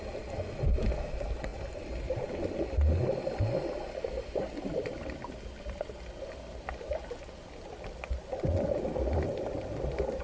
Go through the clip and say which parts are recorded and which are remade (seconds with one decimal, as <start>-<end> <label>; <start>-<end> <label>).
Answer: 0.0-10.2 recorded